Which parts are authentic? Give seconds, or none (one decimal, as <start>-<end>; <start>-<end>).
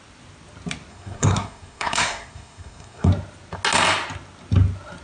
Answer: 0.0-0.9; 3.1-5.0